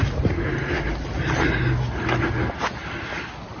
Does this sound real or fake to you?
real